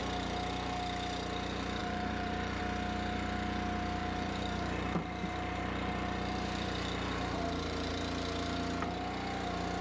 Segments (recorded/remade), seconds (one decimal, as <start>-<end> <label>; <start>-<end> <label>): 0.0-1.8 recorded; 1.8-2.6 remade; 2.6-4.0 recorded; 4.0-7.9 remade; 7.9-9.8 recorded